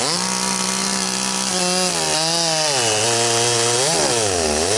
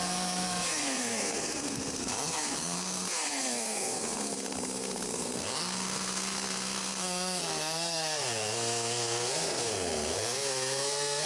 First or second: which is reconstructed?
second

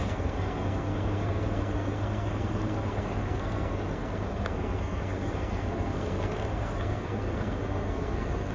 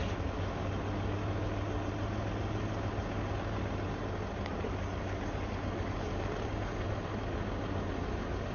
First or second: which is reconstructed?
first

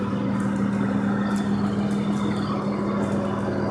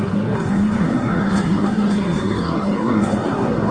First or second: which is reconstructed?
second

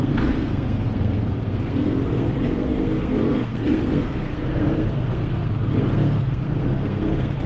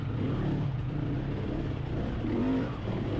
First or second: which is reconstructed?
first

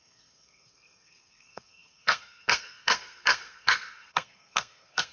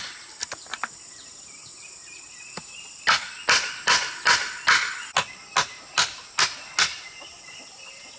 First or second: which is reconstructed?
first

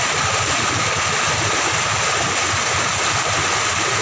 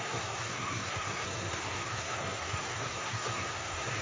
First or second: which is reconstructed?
second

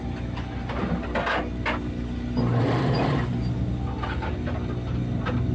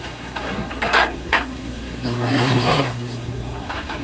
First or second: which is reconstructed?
second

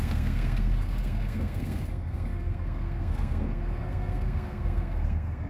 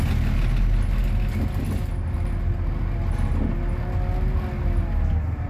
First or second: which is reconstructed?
first